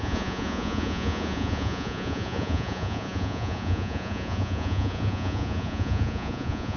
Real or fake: fake